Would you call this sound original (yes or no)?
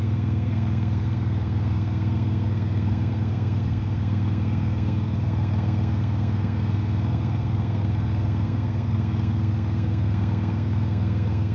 no